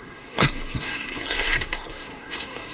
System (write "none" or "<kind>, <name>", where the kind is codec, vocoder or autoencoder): codec, SNAC